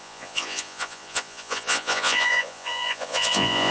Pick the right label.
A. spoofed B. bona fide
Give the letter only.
A